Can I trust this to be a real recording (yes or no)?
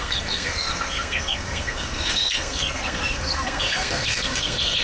no